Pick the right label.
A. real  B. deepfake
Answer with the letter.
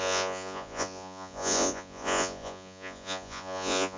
B